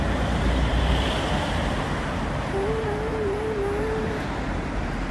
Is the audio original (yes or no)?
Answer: no